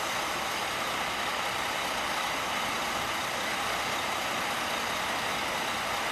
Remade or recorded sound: recorded